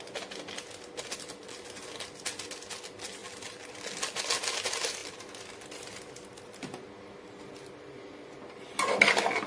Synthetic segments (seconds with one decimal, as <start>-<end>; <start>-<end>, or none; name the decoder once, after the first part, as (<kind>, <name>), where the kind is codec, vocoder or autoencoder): none